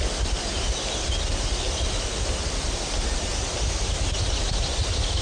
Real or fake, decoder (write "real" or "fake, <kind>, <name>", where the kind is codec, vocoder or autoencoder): real